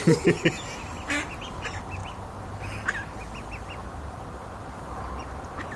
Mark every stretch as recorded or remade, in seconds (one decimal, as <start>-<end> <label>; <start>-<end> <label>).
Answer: 0.0-5.8 recorded